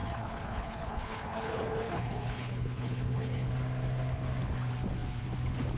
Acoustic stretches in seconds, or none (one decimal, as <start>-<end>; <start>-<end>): 3.5-5.8